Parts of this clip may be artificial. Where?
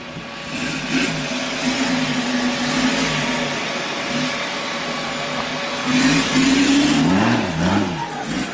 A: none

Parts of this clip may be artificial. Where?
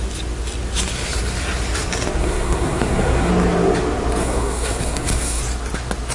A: 2.2-3.3 (codec, SNAC); 4.2-5.4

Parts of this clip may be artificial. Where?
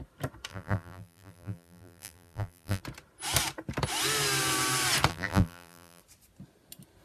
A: 0.5-2.8 (vocoder, BigVGAN v2); 5.1-6.0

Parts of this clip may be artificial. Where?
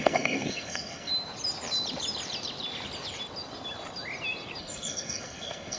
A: 0.0-1.1 (codec, SNAC); 4.6-5.8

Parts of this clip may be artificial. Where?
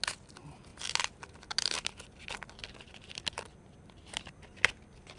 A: none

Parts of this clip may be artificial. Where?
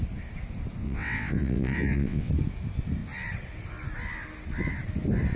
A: 0.8-2.3 (vocoder, WaveNeXt)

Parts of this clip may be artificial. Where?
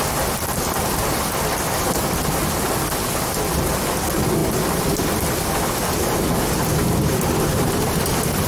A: none